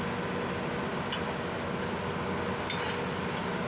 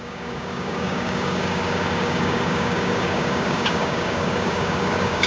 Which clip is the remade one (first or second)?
second